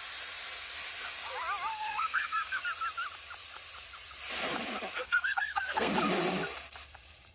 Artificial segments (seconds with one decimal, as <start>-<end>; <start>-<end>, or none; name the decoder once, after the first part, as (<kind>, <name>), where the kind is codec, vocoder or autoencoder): 1.7-2.6 (codec, SNAC); 5.0-5.9